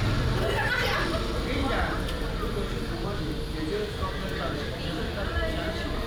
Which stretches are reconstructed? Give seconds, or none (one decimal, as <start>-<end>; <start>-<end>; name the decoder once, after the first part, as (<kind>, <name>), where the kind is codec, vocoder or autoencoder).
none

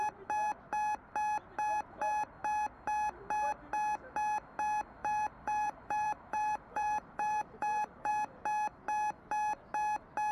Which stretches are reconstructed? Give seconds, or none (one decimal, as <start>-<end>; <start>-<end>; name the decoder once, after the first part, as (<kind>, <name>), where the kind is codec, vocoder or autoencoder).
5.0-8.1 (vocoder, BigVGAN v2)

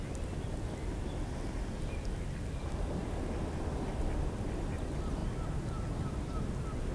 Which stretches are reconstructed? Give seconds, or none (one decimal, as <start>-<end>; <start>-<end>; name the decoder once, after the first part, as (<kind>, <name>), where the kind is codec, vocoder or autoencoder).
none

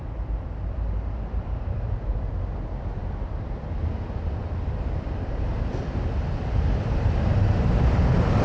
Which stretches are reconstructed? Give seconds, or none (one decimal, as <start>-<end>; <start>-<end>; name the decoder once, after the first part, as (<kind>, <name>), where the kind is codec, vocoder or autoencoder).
0.0-8.4 (vocoder, BigVGAN v2)

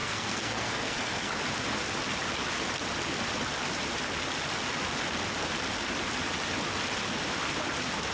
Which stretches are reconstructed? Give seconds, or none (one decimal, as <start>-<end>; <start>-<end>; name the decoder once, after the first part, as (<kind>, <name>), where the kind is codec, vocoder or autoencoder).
0.0-1.4 (codec, SNAC)